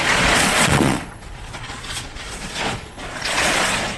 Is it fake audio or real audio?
fake